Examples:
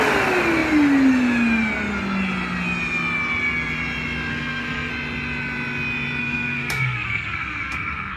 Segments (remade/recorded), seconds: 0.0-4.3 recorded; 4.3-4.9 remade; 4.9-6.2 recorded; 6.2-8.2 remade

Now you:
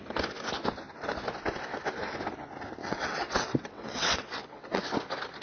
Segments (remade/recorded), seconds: 0.0-2.8 recorded; 2.8-4.8 remade; 4.8-5.4 recorded

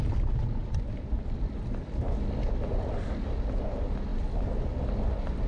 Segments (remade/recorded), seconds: 0.0-5.5 remade

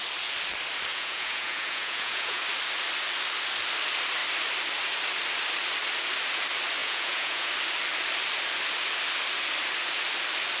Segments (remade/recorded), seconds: 0.0-0.9 recorded; 0.9-2.4 remade; 2.4-6.8 recorded; 6.8-7.5 remade; 7.5-10.6 recorded

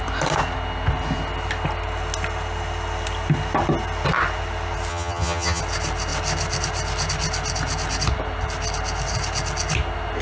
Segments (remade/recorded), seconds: 0.0-4.9 recorded; 4.9-5.6 remade; 5.6-10.2 recorded